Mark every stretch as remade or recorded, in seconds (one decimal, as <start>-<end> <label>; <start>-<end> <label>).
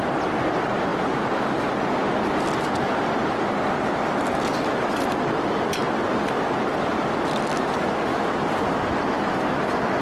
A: 0.0-10.0 recorded